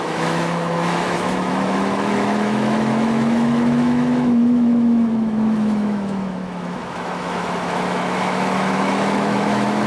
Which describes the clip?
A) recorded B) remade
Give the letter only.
B